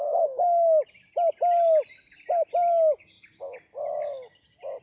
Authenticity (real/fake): real